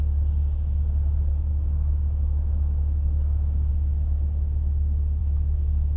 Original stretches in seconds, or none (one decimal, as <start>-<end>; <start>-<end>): 0.0-1.5; 3.7-5.2